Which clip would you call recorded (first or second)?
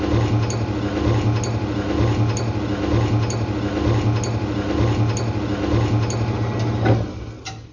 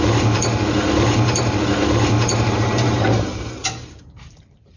first